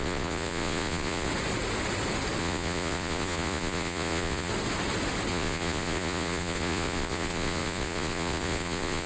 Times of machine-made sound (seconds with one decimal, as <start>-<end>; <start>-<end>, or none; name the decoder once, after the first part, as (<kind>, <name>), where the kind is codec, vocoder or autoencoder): 0.0-1.3 (vocoder, Vocos); 2.4-4.5; 5.3-9.1